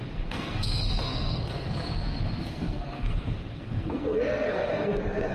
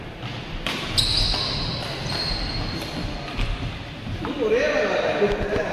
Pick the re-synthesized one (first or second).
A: first